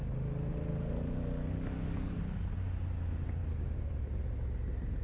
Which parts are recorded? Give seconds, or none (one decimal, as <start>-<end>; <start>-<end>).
0.0-0.7; 2.2-5.0